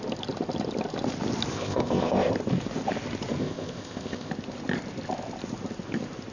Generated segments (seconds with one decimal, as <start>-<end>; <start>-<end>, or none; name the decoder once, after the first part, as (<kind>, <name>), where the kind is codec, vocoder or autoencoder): 1.5-2.3 (codec, ZipCodec); 3.4-4.3